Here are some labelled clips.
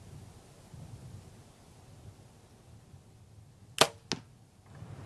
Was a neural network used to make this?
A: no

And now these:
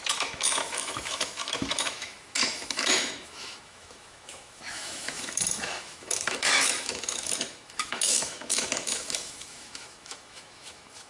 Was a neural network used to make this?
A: yes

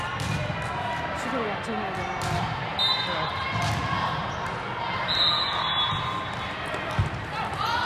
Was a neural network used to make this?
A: no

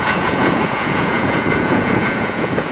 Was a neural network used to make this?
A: yes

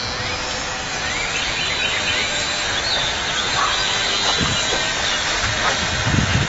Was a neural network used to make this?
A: no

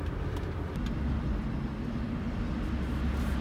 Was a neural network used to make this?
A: no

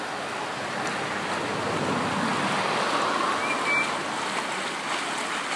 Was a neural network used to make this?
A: no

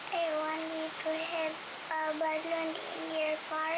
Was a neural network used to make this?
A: no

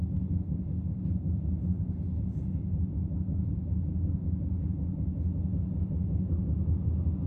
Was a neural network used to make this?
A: no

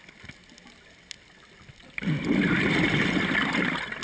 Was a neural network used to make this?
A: no